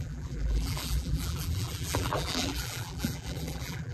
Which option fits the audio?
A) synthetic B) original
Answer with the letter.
A